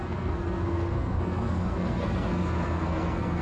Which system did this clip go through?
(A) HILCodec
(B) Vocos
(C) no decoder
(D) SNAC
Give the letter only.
D